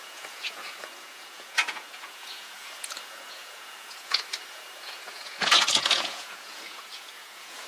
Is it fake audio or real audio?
fake